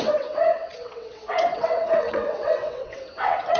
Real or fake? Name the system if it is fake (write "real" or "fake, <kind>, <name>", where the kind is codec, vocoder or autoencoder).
fake, vocoder, WaveNeXt